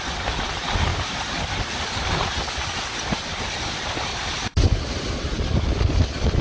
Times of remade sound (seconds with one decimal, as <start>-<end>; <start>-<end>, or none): none